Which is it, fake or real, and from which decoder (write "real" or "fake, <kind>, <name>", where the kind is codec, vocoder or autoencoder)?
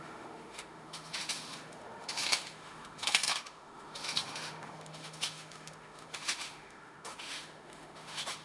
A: fake, autoencoder, DAC-VAE